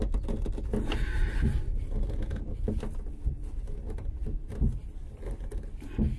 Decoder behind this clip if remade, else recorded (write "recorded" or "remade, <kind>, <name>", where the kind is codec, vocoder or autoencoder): recorded